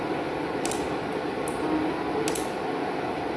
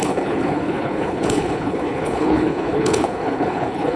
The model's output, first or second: second